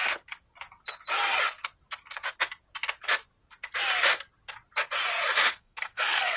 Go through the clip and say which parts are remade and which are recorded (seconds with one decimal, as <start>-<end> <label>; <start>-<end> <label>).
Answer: 0.0-5.5 recorded; 5.5-6.4 remade